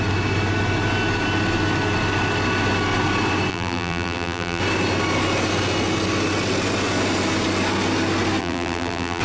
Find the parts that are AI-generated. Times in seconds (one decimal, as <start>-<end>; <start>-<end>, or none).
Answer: 3.5-4.6; 8.4-9.2